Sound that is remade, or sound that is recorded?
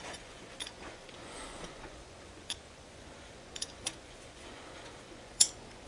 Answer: remade